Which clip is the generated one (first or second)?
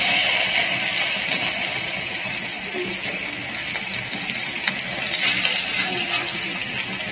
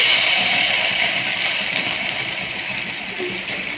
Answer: second